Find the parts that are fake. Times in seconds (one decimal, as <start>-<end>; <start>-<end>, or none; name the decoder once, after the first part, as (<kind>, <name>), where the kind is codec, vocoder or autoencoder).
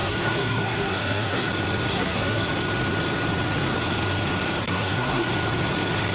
0.0-1.5 (codec, SNAC); 1.9-2.5; 4.6-5.3